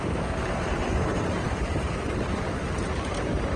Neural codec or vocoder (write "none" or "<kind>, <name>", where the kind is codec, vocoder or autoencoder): vocoder, BigVGAN v2